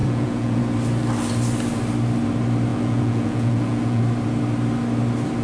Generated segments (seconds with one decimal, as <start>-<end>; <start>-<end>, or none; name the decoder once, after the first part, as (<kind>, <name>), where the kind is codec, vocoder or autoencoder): 0.0-0.6 (vocoder, Vocos); 2.7-4.0